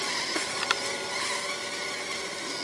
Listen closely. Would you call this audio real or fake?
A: real